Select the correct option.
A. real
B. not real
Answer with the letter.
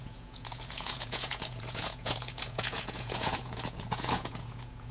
B